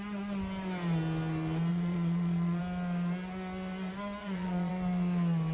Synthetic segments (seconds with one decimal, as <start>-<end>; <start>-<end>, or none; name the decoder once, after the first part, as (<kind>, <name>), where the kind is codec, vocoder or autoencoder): 1.7-2.6 (vocoder, Vocos); 4.2-4.7